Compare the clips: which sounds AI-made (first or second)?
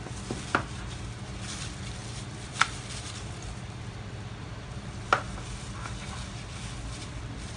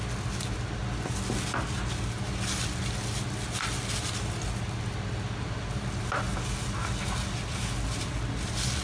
first